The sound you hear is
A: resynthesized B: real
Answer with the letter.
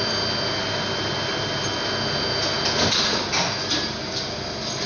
B